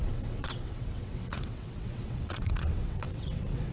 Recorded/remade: remade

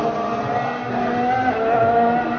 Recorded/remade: recorded